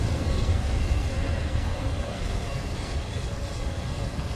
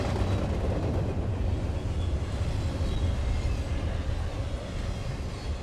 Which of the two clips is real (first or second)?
second